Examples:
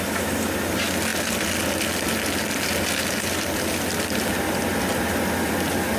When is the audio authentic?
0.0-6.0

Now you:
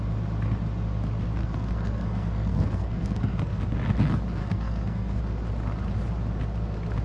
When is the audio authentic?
0.0-1.4; 3.6-4.4; 5.2-7.0

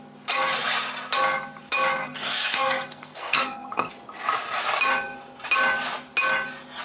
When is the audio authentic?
0.0-2.0; 3.9-6.8

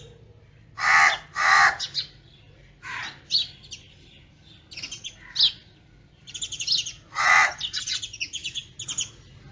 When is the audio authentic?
0.0-9.5

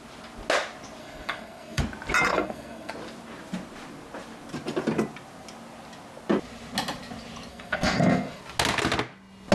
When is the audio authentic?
0.0-1.0; 1.8-2.3; 2.9-7.5; 8.4-9.5

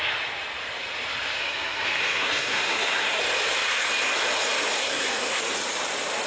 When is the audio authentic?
0.0-1.4; 3.2-4.8; 5.4-6.3